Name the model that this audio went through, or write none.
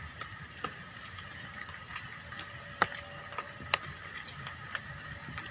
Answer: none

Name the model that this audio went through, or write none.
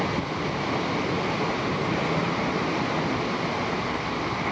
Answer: none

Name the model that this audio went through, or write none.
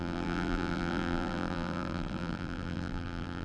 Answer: vocoder, BigVGAN v2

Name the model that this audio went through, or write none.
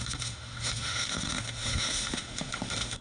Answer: autoencoder, DAC-VAE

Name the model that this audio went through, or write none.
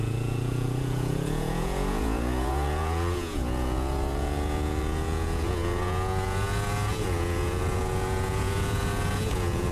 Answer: vocoder, Vocos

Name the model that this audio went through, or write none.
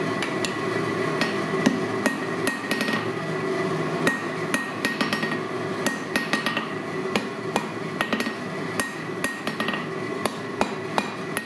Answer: none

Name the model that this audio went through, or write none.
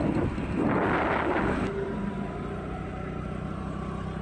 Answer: none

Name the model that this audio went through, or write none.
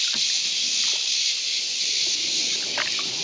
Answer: none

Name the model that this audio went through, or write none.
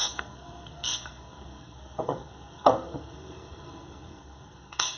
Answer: codec, SNAC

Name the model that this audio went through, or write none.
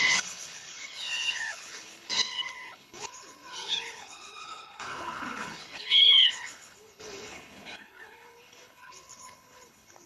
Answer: codec, HILCodec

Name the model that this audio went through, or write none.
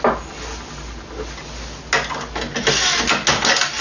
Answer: none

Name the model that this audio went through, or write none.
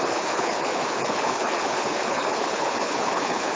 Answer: codec, HILCodec